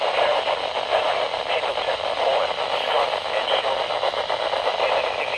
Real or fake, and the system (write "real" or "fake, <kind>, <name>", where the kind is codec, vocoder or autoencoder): real